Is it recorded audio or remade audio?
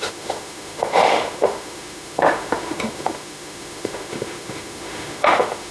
remade